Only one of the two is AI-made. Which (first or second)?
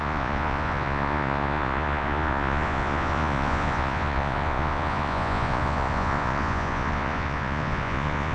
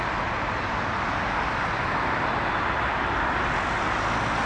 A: first